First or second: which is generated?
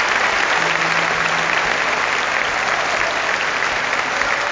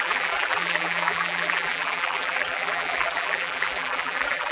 second